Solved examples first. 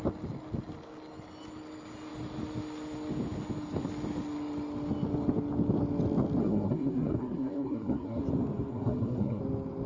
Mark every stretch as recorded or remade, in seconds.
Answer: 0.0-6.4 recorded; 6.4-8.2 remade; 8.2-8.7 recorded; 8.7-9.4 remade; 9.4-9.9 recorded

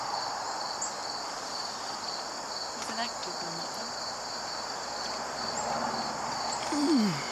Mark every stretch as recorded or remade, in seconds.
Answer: 0.0-7.3 recorded

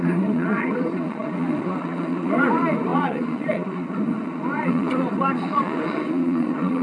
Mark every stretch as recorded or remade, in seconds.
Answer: 0.0-6.8 remade

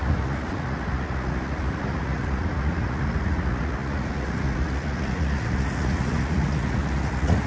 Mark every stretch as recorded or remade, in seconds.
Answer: 0.0-7.5 remade

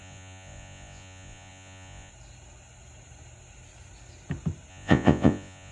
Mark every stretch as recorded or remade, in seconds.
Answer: 0.0-2.1 remade; 2.1-4.7 recorded; 4.7-5.7 remade